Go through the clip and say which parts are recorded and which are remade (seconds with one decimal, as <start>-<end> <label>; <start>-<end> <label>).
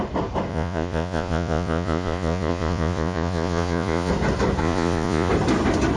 0.0-0.5 recorded; 0.5-4.1 remade; 4.1-4.6 recorded; 4.6-5.3 remade; 5.3-6.0 recorded